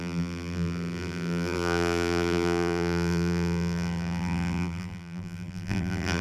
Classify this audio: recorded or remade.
remade